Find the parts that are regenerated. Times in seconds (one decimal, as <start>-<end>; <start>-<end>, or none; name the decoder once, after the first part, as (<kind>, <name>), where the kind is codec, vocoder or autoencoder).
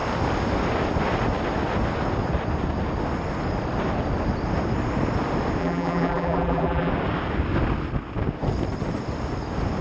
5.6-6.9 (vocoder, BigVGAN v2)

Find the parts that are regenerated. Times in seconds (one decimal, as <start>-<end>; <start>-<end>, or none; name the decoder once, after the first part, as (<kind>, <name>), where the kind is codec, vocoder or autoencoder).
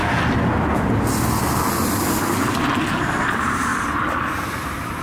3.0-3.7 (vocoder, BigVGAN v2); 4.5-5.0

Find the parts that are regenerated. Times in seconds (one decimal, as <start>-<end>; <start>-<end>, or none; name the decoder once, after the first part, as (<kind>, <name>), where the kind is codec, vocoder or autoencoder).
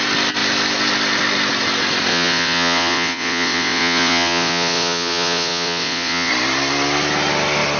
2.1-6.3 (vocoder, WaveNeXt)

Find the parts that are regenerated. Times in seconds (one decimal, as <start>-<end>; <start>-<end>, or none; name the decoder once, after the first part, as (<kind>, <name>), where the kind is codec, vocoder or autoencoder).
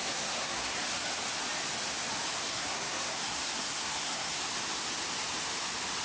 0.0-0.8 (codec, SNAC); 2.4-4.4